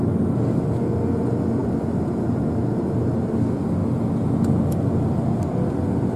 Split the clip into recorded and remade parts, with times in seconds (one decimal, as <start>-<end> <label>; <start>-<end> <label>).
0.0-6.2 recorded